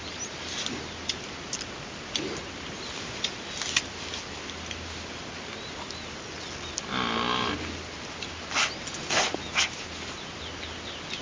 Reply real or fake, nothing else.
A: real